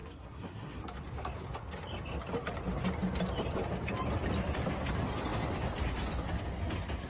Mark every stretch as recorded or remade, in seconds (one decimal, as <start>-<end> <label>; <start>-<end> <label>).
0.0-0.8 remade; 0.8-7.1 recorded